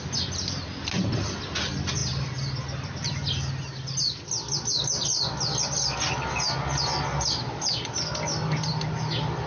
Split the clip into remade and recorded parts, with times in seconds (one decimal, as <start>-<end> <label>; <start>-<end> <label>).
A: 0.0-9.5 recorded